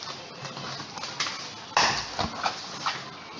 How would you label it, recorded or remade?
recorded